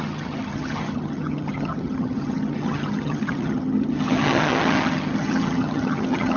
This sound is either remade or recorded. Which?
remade